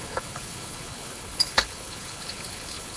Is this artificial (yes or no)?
yes